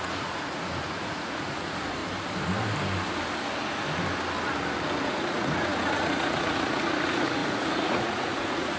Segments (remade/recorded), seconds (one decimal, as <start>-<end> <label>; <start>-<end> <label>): 0.0-2.0 remade; 2.0-5.1 recorded; 5.1-8.8 remade